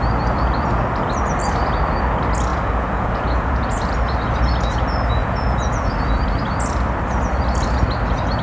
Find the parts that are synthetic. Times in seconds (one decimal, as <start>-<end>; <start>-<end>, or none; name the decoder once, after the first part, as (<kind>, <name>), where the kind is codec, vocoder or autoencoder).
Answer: 2.5-3.8 (vocoder, Vocos); 5.2-5.9